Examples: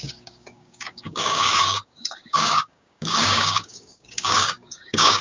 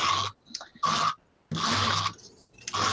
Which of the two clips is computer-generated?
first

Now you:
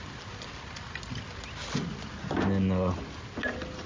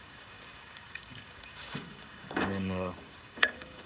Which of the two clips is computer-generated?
second